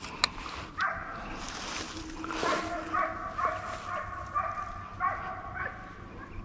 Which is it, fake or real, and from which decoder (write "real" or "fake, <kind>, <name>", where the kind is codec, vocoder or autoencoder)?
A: real